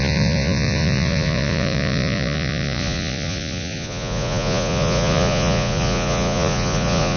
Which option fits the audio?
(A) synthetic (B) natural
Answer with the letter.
A